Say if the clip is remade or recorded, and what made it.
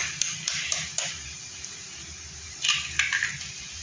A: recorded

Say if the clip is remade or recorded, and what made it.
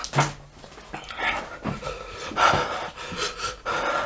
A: recorded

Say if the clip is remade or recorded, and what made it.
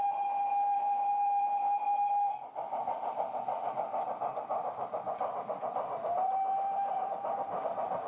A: recorded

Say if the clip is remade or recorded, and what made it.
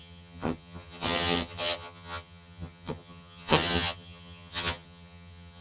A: remade, vocoder, HiFi-GAN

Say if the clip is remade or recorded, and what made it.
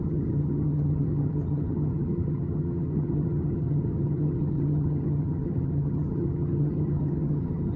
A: remade, vocoder, HiFi-GAN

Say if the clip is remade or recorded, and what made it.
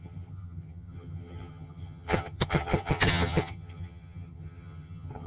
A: remade, vocoder, HiFi-GAN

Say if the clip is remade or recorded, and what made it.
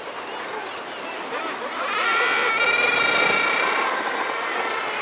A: recorded